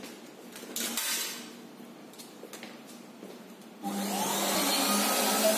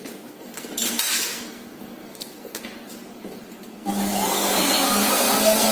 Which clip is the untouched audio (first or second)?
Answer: first